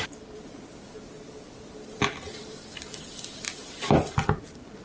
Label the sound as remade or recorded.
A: remade